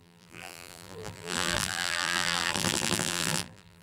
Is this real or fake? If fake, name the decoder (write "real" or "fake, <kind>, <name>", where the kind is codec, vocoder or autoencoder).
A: fake, vocoder, BigVGAN v2